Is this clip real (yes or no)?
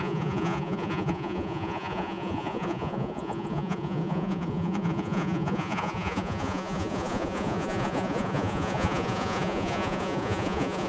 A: no